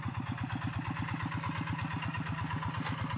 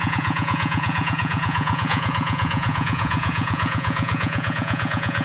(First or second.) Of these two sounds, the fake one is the second